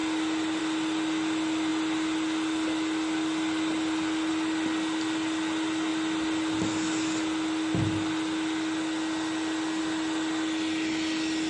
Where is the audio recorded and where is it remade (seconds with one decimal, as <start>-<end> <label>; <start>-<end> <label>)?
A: 0.0-11.5 recorded